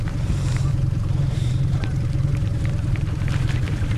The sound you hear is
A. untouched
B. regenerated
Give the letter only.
B